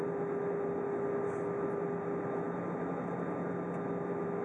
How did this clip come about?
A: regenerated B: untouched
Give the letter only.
B